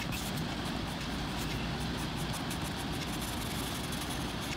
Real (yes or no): yes